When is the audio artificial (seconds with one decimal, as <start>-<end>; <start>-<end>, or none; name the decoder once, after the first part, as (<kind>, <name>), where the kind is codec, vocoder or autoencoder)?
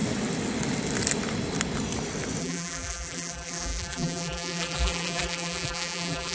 2.4-6.3 (vocoder, BigVGAN v2)